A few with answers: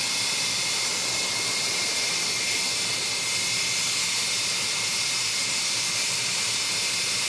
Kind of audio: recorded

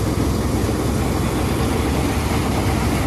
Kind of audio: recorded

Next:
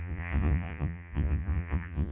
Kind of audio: remade